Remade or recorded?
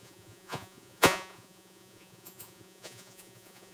remade